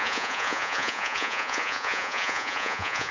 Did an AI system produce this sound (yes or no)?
yes